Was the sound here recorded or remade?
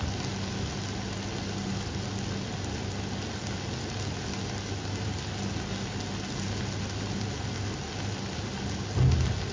recorded